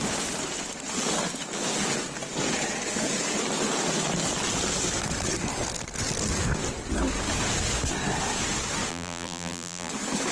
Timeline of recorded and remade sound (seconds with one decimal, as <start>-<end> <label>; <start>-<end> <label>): 0.0-8.9 recorded; 8.9-9.9 remade; 9.9-10.3 recorded